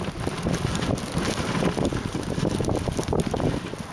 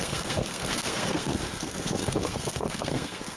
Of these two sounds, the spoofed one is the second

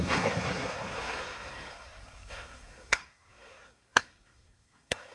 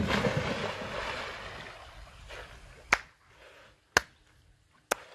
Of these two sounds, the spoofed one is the first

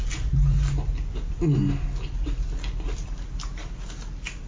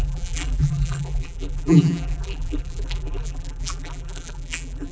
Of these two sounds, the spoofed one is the second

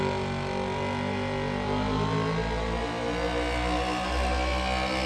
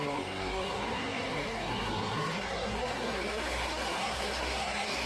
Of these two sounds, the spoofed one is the second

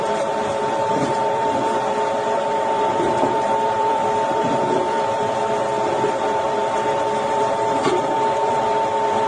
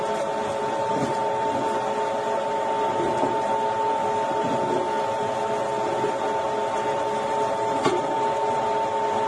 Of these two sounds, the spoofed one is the first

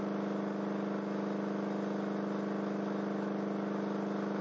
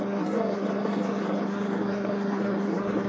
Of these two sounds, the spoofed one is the second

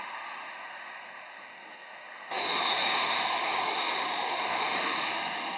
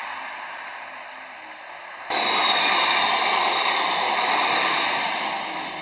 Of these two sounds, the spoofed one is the first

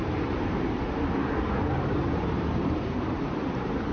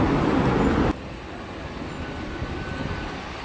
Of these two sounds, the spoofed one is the first